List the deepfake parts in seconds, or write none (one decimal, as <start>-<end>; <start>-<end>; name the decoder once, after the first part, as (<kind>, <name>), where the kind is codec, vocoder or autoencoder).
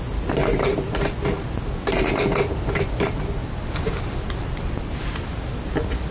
none